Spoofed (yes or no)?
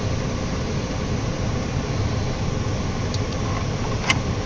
no